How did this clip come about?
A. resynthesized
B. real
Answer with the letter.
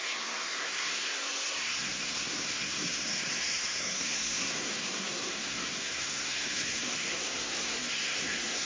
A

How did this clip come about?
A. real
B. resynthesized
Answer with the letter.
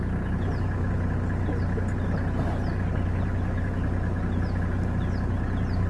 A